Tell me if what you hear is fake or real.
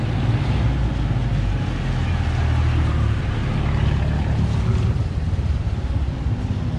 real